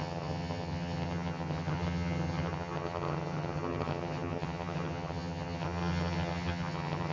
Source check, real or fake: fake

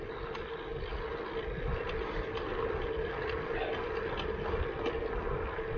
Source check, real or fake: real